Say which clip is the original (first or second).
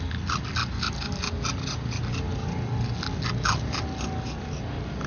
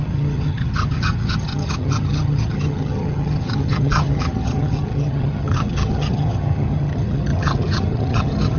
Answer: first